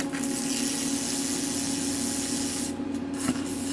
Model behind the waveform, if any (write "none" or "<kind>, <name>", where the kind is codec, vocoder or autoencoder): none